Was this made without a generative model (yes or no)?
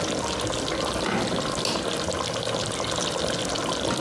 yes